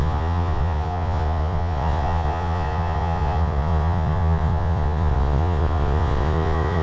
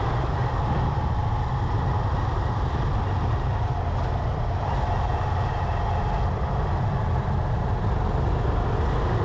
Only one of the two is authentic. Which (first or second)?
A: second